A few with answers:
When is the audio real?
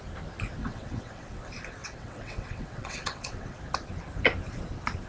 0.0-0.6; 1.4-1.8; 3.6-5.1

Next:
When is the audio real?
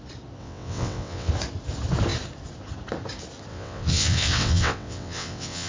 0.0-0.4; 1.3-3.5